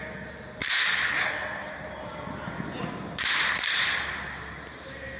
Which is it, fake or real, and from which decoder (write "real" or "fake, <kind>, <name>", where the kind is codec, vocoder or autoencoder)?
real